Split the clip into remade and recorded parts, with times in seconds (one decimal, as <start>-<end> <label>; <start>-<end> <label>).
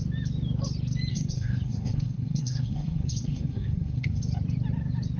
0.0-1.1 recorded; 1.1-4.2 remade; 4.2-5.2 recorded